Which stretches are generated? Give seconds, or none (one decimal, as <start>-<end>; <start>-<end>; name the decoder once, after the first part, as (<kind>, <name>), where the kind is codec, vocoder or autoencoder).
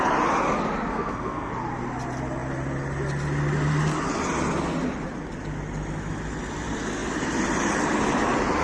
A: 0.9-1.5 (codec, SNAC)